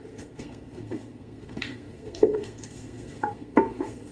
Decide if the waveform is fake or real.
fake